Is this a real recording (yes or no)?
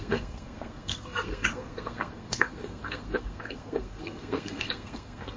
no